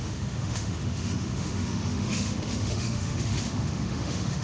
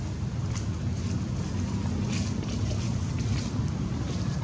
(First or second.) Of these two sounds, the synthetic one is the first